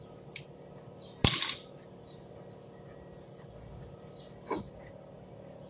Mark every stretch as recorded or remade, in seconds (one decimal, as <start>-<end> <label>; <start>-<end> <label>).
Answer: 0.0-5.7 recorded